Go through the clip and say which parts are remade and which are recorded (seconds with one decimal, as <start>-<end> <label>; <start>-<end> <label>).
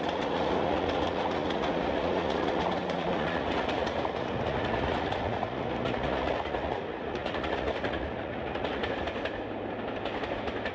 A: 0.0-8.8 remade; 8.8-10.7 recorded